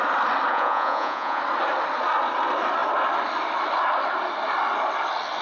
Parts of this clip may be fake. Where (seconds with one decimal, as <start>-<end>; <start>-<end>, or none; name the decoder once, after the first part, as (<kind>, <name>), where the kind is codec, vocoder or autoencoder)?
0.5-1.4 (vocoder, Vocos)